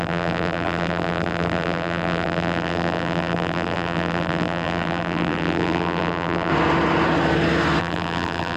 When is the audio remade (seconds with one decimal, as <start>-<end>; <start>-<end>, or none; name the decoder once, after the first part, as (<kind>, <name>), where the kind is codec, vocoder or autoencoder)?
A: 0.0-6.5 (vocoder, BigVGAN v2); 7.8-8.6